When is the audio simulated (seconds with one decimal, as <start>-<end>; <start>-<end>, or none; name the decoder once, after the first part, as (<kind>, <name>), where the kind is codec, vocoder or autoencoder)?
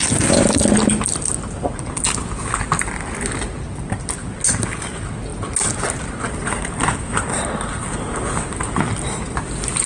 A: none